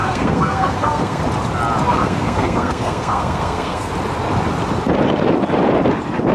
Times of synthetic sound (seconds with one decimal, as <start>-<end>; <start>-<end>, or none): 0.0-1.2; 1.9-3.9

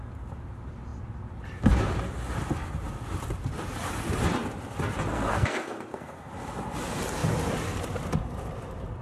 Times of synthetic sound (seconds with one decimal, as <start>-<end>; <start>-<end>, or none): 5.1-6.3